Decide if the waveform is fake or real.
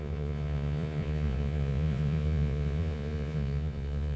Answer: fake